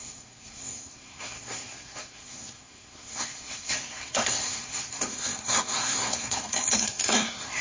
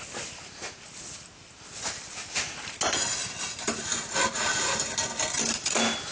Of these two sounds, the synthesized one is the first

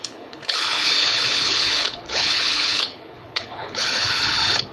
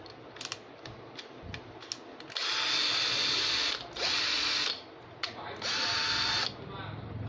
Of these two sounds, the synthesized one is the first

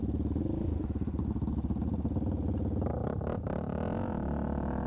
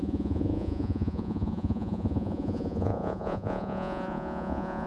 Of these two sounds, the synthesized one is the second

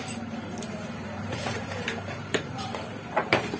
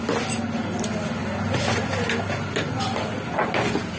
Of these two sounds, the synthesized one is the first